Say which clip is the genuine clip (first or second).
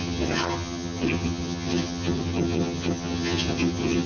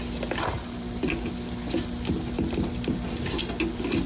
second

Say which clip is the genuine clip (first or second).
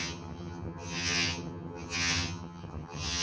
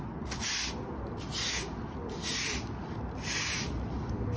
second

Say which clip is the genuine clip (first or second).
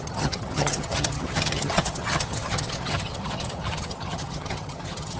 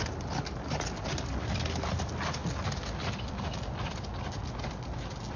second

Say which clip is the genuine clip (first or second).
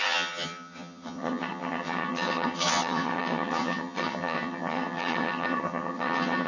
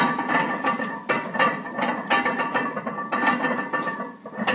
second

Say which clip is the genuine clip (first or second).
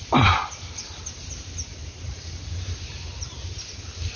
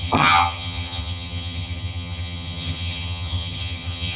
first